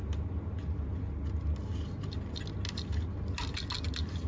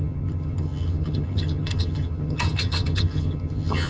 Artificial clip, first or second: second